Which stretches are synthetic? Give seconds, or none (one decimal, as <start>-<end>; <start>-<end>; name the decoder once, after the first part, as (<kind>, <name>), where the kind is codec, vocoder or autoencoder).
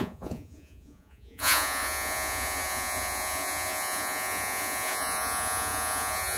0.0-6.4 (vocoder, Vocos)